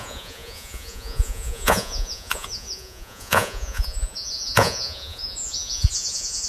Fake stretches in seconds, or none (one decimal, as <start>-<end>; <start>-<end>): 0.0-6.5